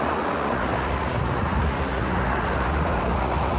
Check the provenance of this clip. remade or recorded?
remade